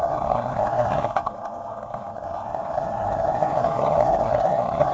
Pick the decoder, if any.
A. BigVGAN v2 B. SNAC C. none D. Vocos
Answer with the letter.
B